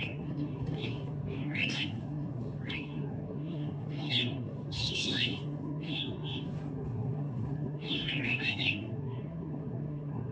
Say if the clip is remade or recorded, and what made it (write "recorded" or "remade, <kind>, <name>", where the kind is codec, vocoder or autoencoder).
remade, codec, SNAC